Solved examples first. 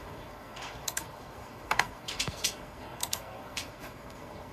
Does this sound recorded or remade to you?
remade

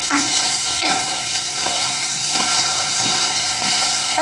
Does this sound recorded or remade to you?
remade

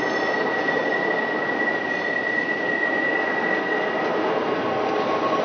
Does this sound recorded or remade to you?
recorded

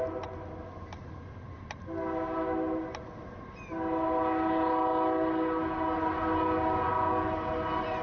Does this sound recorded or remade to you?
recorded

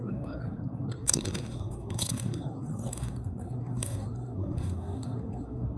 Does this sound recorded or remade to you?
remade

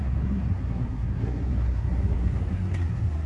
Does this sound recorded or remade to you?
remade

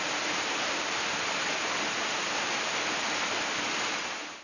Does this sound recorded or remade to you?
recorded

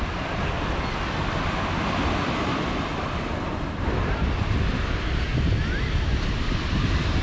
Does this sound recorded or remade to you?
recorded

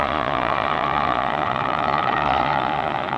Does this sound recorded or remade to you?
remade